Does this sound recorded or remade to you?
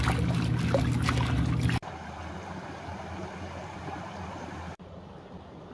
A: recorded